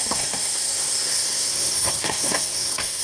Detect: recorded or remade remade